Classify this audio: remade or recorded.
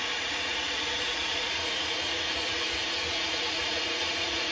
remade